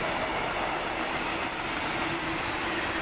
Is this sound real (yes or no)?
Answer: yes